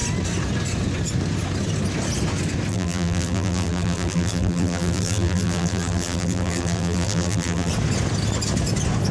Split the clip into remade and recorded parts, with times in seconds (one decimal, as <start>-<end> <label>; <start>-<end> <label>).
0.0-2.7 recorded; 2.7-7.7 remade; 7.7-9.1 recorded